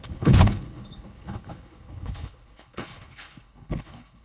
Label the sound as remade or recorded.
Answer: remade